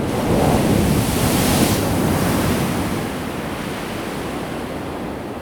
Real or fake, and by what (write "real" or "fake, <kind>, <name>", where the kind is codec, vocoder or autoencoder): real